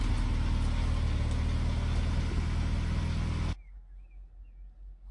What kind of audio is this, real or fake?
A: real